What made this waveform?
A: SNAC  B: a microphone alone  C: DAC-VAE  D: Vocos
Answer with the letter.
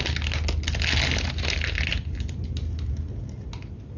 B